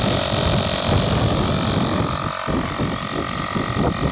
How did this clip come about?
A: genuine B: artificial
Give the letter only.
A